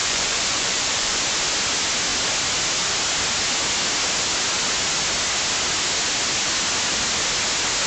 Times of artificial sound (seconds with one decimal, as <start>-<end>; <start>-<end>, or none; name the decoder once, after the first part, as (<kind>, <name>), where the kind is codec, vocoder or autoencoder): 0.0-1.2 (vocoder, Vocos)